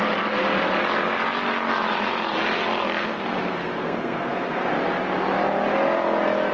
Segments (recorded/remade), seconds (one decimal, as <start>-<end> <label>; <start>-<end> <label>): 0.0-3.0 recorded; 3.0-4.7 remade; 4.7-6.5 recorded